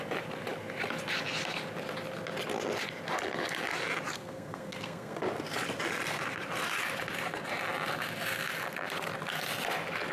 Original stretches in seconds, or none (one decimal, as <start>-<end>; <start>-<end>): 0.0-4.1; 5.2-10.1